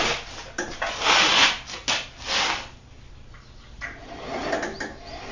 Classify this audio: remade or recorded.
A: recorded